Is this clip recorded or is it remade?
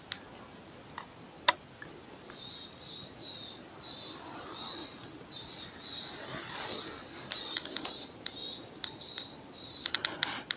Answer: recorded